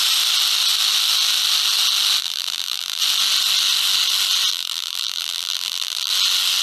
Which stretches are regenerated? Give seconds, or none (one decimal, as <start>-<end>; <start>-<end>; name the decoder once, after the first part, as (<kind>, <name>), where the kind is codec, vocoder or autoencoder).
2.2-3.0 (vocoder, BigVGAN v2); 4.5-6.1